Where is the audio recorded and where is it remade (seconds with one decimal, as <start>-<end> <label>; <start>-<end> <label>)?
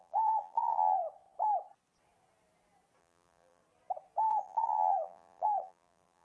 0.0-1.0 remade; 1.0-3.0 recorded; 3.0-3.6 remade; 3.6-4.3 recorded; 4.3-6.2 remade